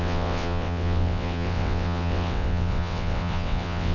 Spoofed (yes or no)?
yes